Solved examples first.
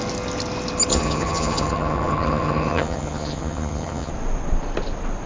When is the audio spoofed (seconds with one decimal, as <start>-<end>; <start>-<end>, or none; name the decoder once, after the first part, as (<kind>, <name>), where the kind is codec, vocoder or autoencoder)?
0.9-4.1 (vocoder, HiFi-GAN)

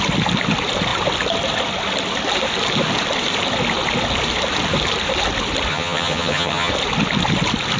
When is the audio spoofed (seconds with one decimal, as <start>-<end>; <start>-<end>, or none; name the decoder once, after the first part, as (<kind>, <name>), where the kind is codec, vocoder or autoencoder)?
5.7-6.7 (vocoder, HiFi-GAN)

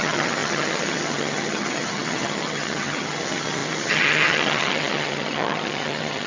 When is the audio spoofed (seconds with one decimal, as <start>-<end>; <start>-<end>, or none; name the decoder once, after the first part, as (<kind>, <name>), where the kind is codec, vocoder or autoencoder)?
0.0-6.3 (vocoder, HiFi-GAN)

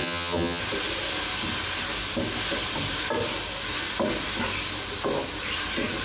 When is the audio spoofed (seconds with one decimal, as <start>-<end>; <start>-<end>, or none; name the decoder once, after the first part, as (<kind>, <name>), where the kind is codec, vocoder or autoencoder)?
0.0-0.6 (vocoder, HiFi-GAN)

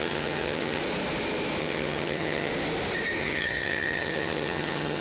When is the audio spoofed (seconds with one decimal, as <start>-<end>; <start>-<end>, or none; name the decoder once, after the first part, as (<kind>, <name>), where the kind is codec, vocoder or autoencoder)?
0.0-0.8 (vocoder, HiFi-GAN); 1.6-2.5; 3.2-5.0